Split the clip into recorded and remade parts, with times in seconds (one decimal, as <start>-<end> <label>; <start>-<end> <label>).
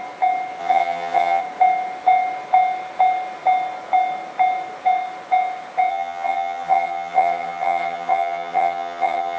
0.0-0.6 recorded; 0.6-1.4 remade; 1.4-5.9 recorded; 5.9-9.4 remade